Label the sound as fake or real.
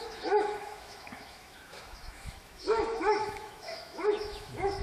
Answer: fake